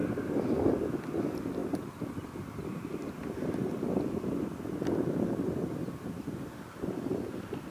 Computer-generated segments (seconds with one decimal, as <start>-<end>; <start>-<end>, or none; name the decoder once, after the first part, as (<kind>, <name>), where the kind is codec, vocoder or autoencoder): 1.6-3.0 (vocoder, BigVGAN v2)